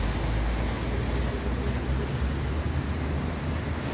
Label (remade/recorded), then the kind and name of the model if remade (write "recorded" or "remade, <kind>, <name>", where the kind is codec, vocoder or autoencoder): recorded